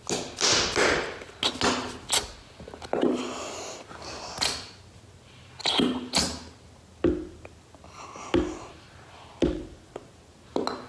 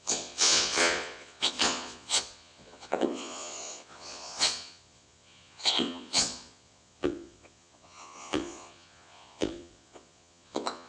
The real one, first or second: first